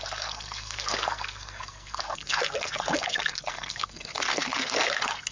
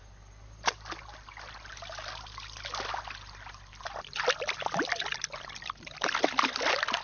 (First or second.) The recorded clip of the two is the second